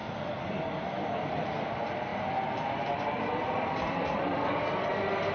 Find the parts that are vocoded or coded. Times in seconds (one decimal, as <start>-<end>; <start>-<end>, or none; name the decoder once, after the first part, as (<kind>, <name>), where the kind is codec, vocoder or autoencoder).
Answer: 0.0-1.4 (vocoder, BigVGAN v2); 2.1-4.6